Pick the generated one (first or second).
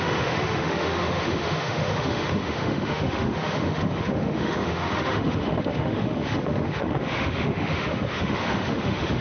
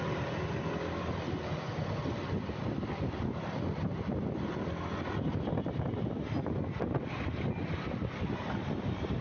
first